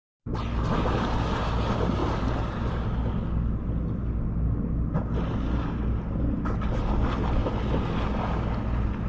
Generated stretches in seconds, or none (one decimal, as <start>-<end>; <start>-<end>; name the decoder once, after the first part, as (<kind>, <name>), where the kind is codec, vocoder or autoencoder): none